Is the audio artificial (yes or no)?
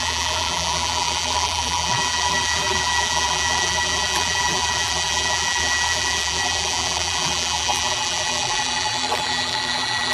yes